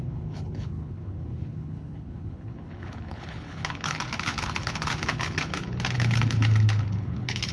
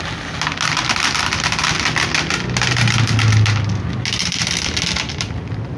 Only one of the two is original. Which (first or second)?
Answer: second